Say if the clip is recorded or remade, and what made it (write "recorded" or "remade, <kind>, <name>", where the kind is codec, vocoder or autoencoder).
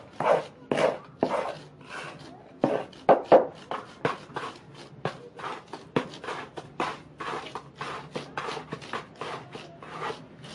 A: recorded